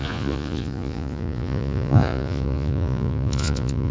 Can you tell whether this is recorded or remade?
remade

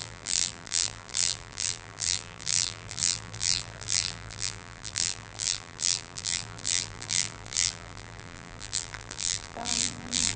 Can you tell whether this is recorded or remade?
remade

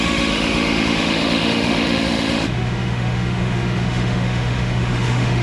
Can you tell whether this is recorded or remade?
remade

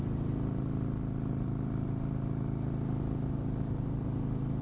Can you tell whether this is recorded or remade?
recorded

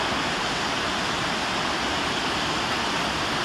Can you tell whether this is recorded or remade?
recorded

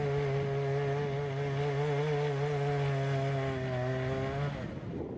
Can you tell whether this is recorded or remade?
recorded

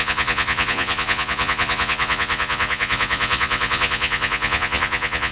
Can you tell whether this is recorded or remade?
remade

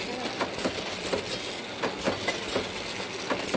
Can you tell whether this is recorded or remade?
recorded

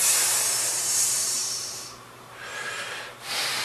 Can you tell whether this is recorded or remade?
remade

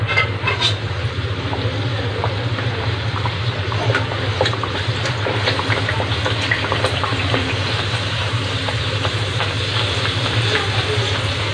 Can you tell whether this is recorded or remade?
remade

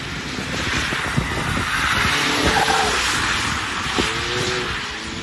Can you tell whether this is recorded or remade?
recorded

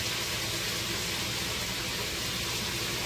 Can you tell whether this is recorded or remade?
recorded